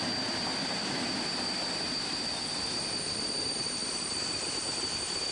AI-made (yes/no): no